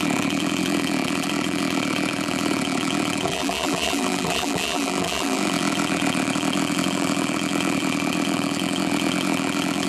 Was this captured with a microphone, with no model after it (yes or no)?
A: no